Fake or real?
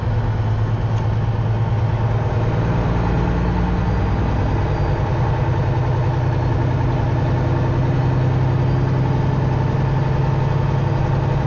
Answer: real